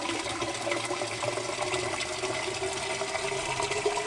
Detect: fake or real real